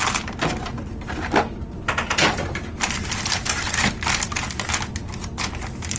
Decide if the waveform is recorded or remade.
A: recorded